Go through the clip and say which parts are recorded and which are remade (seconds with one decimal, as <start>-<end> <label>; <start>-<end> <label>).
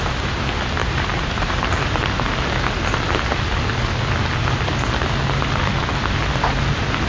0.0-0.8 recorded; 0.8-2.0 remade; 2.0-7.1 recorded